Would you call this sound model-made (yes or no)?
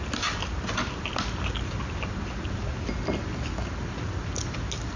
no